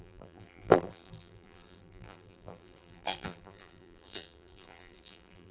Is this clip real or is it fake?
fake